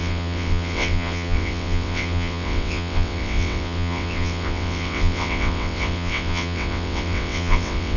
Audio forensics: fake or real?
fake